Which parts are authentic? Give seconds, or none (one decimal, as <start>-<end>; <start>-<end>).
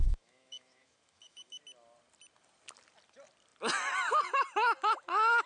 1.6-5.5